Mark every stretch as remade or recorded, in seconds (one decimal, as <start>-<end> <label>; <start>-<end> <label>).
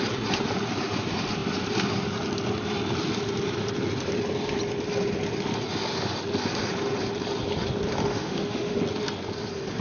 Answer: 0.0-8.0 recorded; 8.0-8.8 remade; 8.8-9.8 recorded